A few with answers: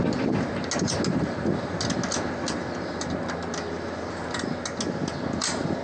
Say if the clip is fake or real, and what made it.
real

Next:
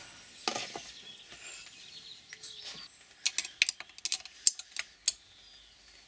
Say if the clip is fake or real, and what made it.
real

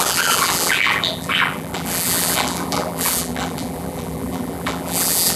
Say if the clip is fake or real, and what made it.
fake, vocoder, BigVGAN v2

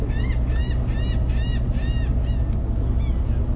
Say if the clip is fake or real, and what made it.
real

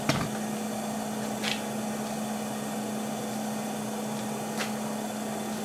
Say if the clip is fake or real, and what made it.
real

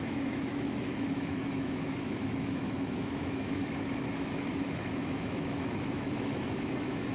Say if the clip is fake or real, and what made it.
fake, autoencoder, DAC-VAE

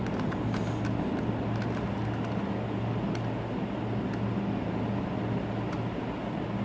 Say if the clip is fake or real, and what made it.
real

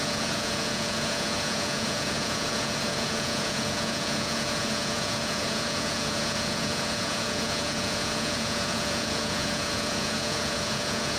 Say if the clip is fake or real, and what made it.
fake, vocoder, Vocos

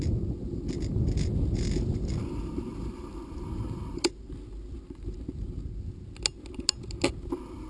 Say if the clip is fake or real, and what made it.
real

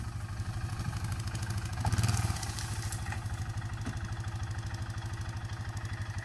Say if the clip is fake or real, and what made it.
real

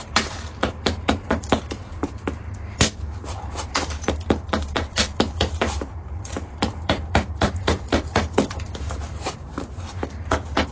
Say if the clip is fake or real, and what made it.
fake, vocoder, BigVGAN v2